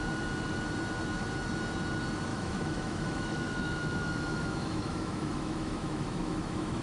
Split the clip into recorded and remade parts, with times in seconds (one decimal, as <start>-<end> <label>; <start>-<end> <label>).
0.0-2.3 recorded; 2.3-6.8 remade